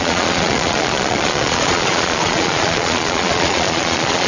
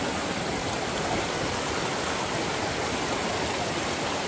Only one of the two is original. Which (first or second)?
second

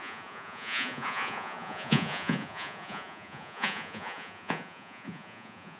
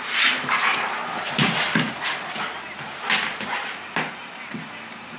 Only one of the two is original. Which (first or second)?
second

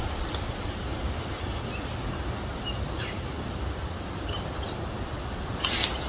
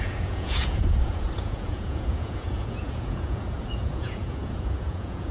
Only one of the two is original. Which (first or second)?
first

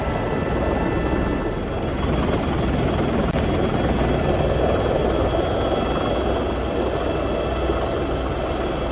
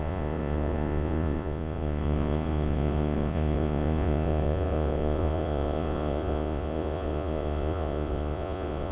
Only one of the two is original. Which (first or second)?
first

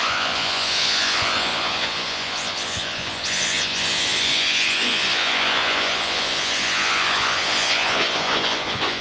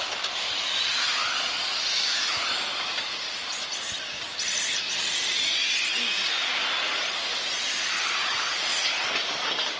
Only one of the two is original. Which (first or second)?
second